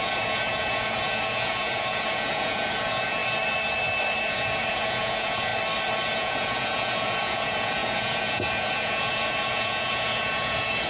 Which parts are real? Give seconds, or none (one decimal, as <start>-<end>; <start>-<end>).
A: 3.2-4.2; 5.5-6.0